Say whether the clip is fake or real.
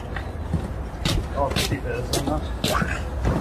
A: real